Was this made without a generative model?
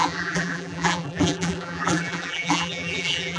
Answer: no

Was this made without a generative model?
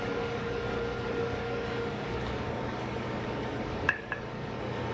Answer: no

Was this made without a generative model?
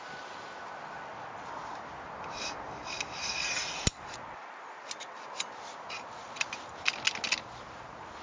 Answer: yes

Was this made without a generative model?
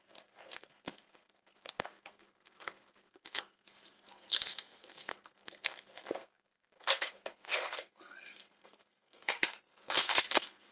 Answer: no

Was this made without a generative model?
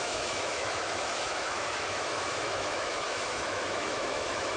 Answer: no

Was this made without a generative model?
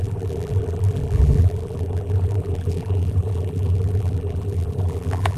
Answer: no